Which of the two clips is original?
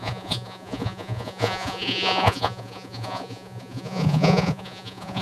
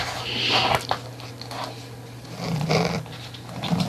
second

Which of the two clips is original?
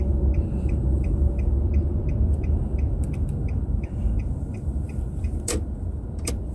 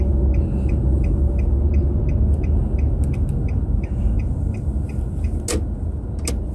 second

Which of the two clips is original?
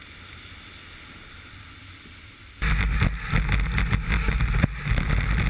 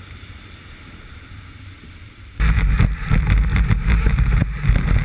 first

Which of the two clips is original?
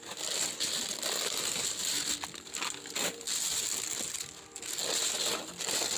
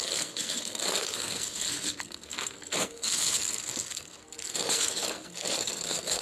first